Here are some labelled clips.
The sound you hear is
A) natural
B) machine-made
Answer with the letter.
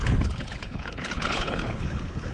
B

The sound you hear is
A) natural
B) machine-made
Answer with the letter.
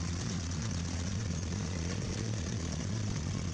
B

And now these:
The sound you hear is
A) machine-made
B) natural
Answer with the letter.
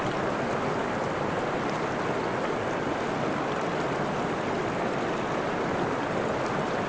B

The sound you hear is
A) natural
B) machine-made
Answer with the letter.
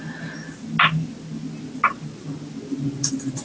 A